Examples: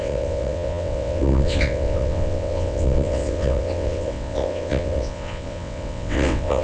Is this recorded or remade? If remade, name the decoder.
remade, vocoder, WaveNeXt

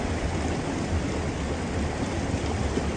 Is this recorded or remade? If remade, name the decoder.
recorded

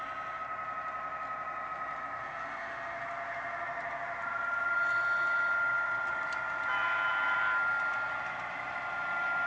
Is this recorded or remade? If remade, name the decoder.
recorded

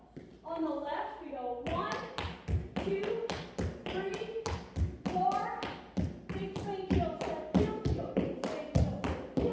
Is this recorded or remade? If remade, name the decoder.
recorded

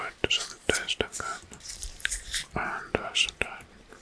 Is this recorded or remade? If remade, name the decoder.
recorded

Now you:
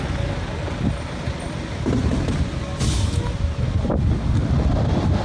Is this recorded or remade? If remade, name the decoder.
recorded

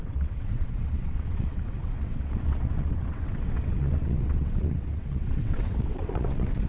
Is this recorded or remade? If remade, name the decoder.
remade, vocoder, WaveNeXt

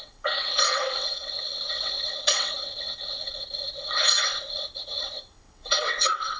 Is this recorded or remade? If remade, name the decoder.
remade, vocoder, WaveNeXt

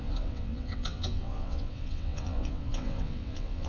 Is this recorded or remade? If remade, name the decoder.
remade, vocoder, WaveNeXt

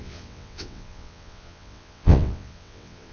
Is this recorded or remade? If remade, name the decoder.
remade, vocoder, WaveNeXt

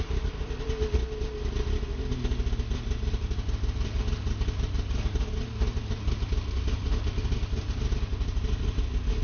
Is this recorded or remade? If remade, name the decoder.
recorded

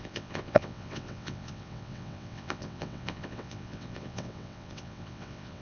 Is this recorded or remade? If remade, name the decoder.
remade, vocoder, WaveNeXt